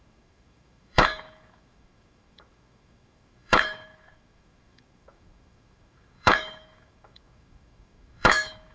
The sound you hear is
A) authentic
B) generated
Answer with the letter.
B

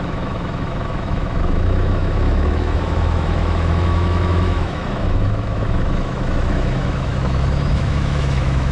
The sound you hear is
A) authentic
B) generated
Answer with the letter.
B